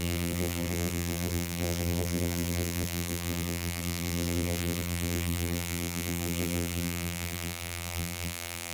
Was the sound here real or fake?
fake